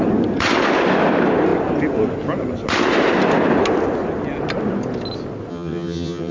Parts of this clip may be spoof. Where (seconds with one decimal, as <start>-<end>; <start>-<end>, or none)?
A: 5.5-6.3